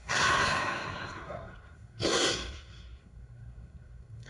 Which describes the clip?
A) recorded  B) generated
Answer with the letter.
B